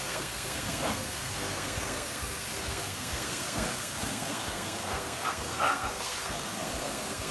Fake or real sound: fake